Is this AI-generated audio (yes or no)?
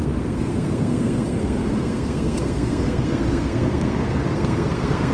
yes